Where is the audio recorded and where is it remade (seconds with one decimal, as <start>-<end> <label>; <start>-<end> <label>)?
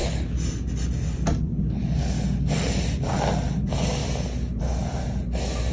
0.0-5.7 recorded